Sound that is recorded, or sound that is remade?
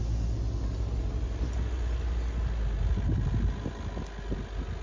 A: recorded